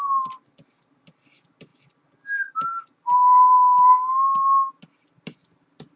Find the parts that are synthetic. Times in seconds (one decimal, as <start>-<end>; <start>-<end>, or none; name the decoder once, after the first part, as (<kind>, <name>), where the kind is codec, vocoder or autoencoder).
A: none